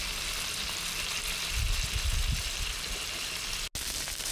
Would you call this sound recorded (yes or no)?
yes